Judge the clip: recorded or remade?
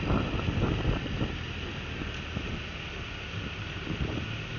recorded